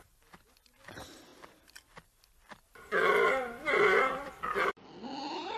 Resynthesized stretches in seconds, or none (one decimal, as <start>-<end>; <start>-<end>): 1.3-4.7